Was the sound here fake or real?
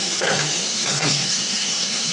fake